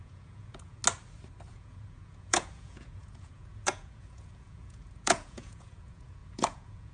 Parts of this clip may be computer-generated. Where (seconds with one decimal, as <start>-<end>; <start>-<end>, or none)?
0.0-0.8; 1.5-6.9